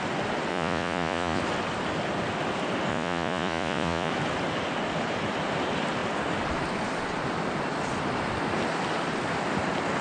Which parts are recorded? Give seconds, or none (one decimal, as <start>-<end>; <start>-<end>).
0.0-0.5; 1.4-2.9; 4.1-10.0